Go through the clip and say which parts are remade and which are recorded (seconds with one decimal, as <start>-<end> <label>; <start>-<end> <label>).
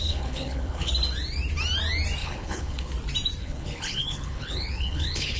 0.0-0.9 remade; 0.9-2.2 recorded; 2.2-2.9 remade; 2.9-3.4 recorded; 3.4-5.4 remade